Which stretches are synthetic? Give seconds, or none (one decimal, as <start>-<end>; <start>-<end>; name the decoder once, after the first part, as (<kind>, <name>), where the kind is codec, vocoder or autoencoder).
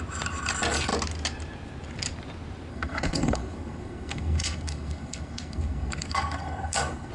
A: 2.7-7.1 (codec, SNAC)